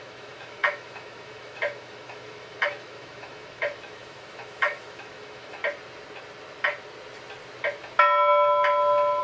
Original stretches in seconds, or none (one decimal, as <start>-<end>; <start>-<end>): 5.6-9.2